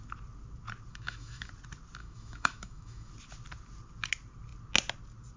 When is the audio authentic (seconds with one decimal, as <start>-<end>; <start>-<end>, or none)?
0.0-0.9; 1.5-2.0; 3.1-5.4